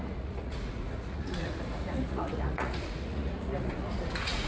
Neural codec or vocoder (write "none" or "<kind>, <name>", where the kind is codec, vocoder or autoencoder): vocoder, Vocos